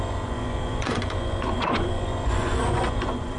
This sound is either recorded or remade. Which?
remade